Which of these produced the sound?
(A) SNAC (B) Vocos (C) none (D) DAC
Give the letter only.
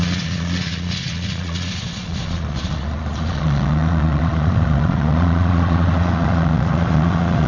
B